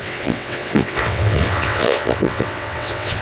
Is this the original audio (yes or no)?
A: no